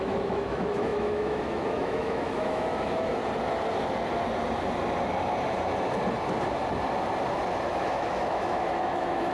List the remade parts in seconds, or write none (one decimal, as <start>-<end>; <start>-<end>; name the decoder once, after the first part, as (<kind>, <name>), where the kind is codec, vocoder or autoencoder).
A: 0.0-3.2 (autoencoder, DAC-VAE); 7.6-9.3